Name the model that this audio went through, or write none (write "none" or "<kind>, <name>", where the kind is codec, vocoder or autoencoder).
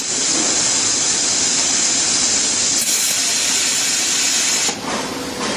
none